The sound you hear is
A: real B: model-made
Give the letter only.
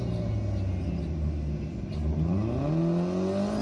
A